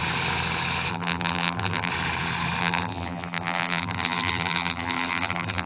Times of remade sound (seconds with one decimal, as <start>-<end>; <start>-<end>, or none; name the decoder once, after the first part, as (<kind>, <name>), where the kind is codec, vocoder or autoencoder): 0.9-1.9 (vocoder, BigVGAN v2); 2.6-5.7